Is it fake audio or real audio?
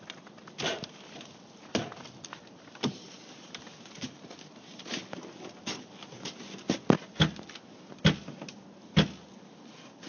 real